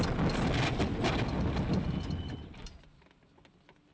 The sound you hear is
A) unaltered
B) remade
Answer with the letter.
A